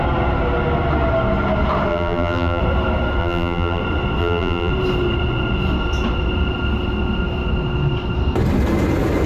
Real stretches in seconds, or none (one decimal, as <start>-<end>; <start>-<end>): 0.0-1.9; 2.6-3.2; 3.8-4.2; 4.7-9.3